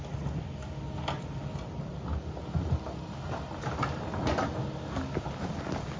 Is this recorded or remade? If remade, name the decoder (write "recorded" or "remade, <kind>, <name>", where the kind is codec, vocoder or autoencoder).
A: recorded